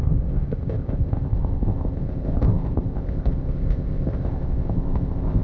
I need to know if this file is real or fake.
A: fake